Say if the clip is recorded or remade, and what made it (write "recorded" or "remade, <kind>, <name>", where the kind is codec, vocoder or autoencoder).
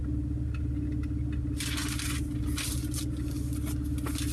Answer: recorded